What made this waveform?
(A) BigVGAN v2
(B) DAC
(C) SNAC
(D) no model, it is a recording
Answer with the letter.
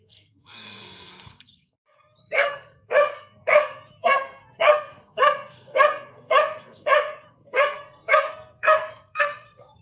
C